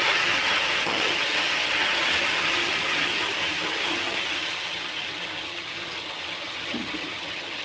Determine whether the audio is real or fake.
fake